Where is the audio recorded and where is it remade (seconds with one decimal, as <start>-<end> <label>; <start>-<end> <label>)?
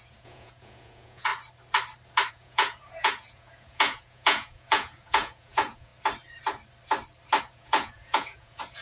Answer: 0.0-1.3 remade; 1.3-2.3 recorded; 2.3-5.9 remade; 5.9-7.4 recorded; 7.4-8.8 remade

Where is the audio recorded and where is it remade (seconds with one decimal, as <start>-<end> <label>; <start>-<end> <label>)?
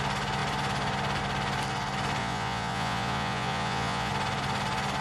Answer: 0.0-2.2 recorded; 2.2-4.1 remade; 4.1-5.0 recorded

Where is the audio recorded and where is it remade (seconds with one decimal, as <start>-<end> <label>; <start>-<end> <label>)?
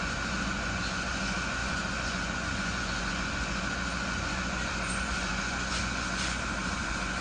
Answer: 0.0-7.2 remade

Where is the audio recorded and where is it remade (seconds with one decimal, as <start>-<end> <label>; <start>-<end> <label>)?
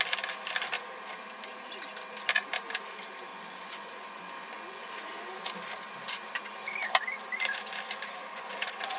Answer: 0.0-3.3 recorded; 3.3-4.9 remade; 4.9-8.3 recorded; 8.3-9.0 remade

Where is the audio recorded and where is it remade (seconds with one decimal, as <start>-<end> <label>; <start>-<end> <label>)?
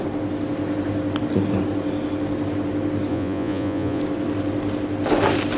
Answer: 0.0-3.1 recorded; 3.1-4.0 remade; 4.0-5.6 recorded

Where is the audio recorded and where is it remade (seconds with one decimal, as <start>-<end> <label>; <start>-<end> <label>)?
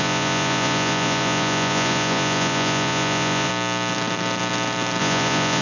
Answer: 0.0-3.5 remade; 3.5-5.0 recorded; 5.0-5.6 remade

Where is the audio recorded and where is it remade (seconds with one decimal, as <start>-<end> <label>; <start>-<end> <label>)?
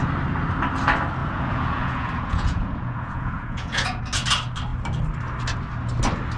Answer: 0.0-1.2 recorded; 1.2-4.0 remade; 4.0-6.4 recorded